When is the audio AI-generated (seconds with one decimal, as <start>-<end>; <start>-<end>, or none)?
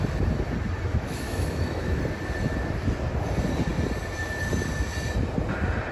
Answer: 0.9-2.0